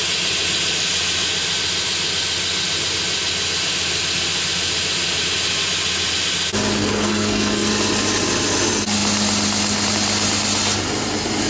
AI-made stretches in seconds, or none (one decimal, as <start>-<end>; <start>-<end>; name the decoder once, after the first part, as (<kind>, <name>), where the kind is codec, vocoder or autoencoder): 6.8-7.7 (codec, SNAC)